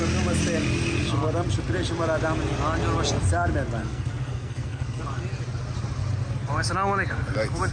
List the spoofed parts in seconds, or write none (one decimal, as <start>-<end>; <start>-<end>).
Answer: 3.8-5.0